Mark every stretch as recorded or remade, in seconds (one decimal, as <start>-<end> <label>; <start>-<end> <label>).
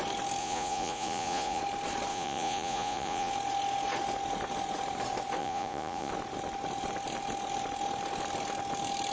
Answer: 0.0-0.4 recorded; 0.4-1.6 remade; 1.6-2.1 recorded; 2.1-3.3 remade; 3.3-5.4 recorded; 5.4-6.1 remade; 6.1-9.1 recorded